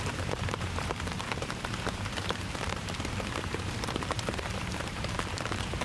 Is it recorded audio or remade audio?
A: remade